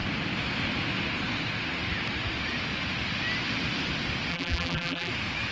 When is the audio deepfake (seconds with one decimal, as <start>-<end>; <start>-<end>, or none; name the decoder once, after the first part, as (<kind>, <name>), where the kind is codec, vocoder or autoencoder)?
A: 4.3-5.1 (vocoder, BigVGAN v2)